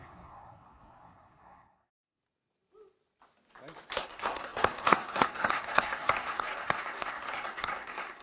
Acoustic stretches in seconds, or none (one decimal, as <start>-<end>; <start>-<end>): 2.2-4.0